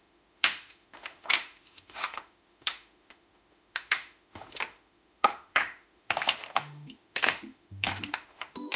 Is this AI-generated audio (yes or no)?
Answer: yes